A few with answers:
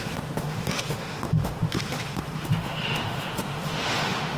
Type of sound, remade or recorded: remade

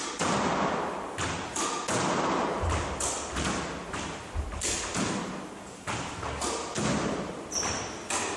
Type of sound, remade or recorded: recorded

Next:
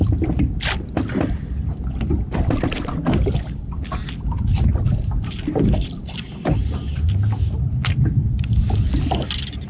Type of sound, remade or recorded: recorded